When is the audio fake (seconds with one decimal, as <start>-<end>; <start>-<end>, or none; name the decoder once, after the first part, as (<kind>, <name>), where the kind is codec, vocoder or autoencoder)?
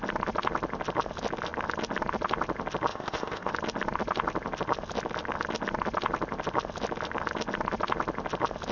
2.9-3.5 (codec, ZipCodec)